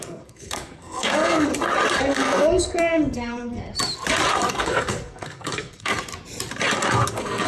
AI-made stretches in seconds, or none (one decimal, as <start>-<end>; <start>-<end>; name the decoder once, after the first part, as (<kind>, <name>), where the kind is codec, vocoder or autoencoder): 0.0-1.5 (codec, SNAC); 2.0-3.7; 4.5-6.0; 7.1-7.5